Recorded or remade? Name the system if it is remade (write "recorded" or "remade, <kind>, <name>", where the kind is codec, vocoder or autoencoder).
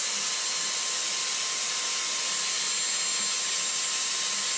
recorded